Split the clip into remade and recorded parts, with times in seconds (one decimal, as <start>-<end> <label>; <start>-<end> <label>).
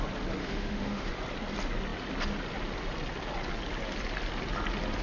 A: 0.0-0.4 recorded; 0.4-1.1 remade; 1.1-5.0 recorded